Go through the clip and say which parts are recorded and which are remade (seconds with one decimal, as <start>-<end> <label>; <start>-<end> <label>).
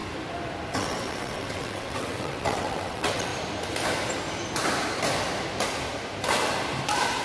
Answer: 0.0-0.7 recorded; 0.7-3.3 remade; 3.3-7.2 recorded